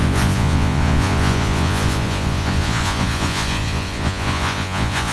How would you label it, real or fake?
fake